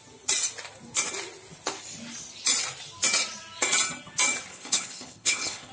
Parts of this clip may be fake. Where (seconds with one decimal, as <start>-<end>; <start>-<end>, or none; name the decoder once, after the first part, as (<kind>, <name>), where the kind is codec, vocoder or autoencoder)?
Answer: 4.5-5.7 (codec, HILCodec)